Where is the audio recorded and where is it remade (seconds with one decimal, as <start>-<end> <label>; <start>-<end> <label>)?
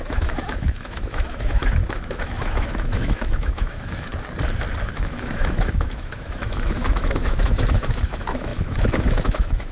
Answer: 0.0-4.1 remade; 4.1-5.0 recorded; 5.0-9.7 remade